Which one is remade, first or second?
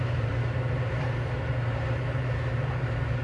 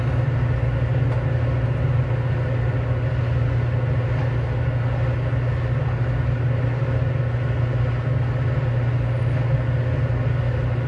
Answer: first